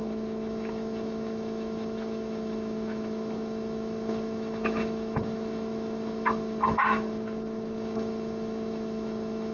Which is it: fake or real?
fake